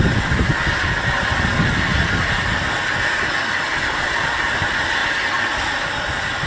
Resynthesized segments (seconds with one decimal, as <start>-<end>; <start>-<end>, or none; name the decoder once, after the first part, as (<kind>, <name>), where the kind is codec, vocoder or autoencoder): 0.0-0.5 (vocoder, BigVGAN v2); 4.4-5.0; 5.6-6.5